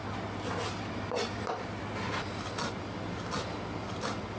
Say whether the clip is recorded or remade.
recorded